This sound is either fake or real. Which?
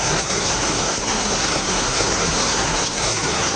fake